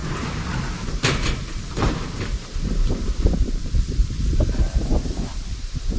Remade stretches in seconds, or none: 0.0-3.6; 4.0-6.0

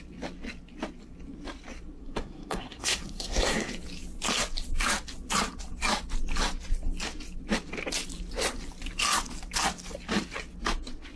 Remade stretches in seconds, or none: 2.0-3.7

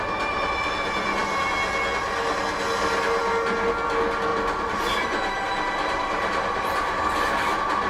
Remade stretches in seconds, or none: 4.3-7.0